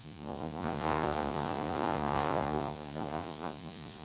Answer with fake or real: fake